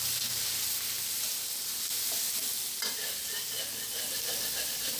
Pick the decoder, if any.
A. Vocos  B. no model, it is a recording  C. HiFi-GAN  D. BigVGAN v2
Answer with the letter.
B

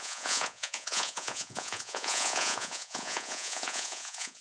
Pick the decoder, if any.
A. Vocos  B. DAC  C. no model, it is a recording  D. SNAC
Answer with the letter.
A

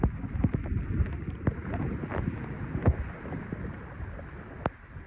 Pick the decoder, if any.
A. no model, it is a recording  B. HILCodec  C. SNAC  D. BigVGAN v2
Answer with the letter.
A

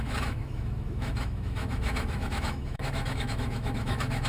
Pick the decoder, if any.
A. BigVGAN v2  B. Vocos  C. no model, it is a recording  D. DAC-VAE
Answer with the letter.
D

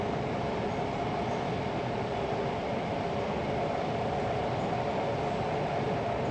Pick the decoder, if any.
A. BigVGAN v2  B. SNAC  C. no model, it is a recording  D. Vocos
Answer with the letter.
C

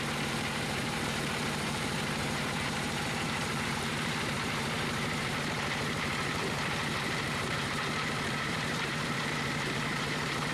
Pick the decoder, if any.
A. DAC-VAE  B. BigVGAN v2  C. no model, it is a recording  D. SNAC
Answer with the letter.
B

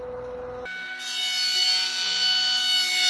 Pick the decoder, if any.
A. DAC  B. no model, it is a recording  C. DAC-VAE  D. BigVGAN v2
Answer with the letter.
B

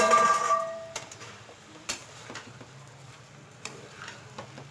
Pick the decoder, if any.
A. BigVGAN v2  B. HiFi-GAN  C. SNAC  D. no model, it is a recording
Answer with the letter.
A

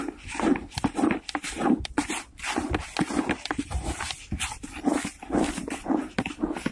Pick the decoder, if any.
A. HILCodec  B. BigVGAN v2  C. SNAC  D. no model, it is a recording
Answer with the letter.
D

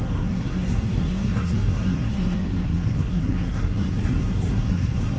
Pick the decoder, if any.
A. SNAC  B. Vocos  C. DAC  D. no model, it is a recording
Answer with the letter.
A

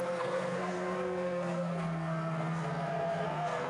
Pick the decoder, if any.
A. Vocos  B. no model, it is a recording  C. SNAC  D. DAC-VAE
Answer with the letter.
C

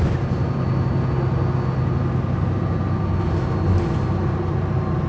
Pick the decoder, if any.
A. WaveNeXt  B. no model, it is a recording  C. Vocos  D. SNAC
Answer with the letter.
B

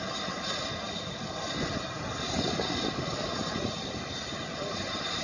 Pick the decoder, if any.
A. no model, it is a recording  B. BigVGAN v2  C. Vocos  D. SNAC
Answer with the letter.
A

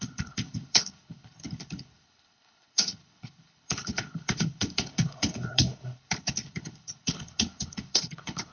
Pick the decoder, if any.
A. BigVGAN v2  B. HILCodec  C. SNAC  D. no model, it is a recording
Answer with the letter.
B